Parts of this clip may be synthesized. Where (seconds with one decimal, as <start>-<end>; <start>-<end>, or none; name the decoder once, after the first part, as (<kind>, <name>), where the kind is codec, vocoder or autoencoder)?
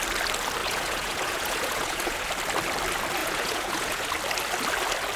0.6-2.3 (vocoder, Vocos); 3.2-4.1